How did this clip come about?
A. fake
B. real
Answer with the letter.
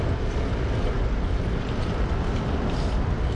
B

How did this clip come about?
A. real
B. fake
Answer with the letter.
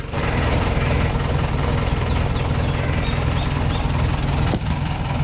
A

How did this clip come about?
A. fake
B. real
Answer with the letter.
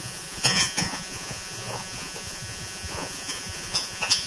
A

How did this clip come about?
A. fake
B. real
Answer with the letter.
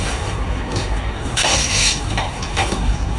A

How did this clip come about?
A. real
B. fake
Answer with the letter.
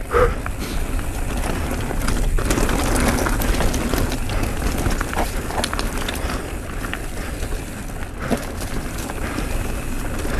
A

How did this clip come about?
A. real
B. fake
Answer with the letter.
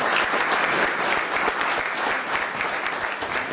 A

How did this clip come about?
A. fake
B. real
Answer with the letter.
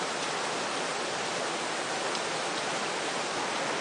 B